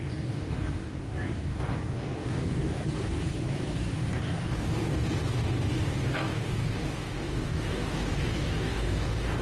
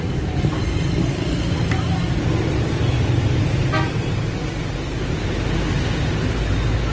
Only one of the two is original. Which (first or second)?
second